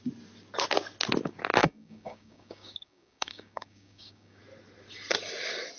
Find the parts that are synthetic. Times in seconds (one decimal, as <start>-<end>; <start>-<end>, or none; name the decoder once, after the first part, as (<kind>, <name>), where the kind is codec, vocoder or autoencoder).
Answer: 1.6-4.4 (codec, DAC)